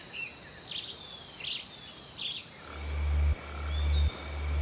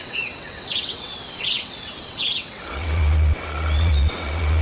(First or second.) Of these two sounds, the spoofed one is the second